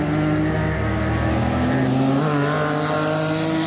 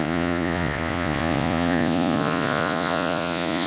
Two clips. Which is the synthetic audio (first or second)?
second